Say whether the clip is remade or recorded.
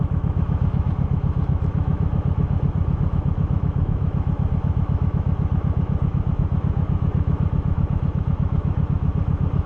remade